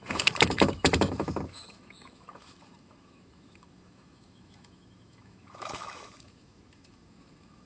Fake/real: fake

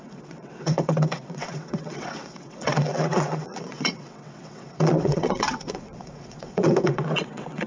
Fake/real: fake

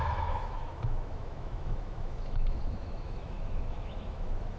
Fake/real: fake